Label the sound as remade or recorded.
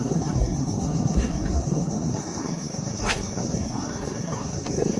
remade